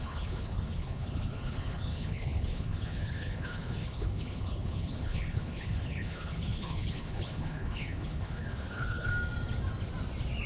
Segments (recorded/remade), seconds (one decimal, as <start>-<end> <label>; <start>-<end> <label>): 0.0-9.1 remade; 9.1-10.5 recorded